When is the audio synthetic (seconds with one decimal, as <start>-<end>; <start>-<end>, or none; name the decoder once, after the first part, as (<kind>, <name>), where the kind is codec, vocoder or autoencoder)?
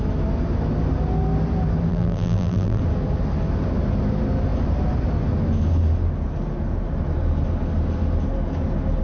1.9-2.8 (vocoder, BigVGAN v2)